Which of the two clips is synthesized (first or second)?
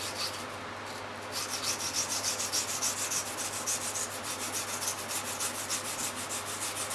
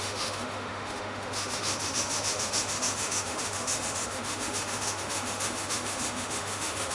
second